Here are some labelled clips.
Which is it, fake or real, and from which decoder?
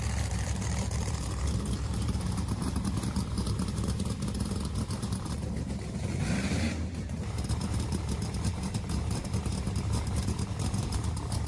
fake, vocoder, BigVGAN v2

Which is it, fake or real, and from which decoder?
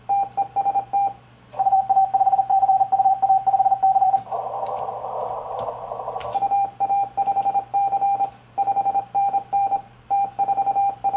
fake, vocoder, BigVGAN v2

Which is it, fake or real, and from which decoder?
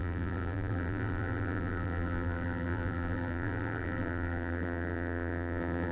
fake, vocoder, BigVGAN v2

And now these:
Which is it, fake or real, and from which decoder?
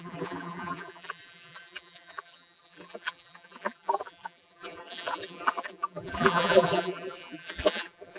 fake, vocoder, BigVGAN v2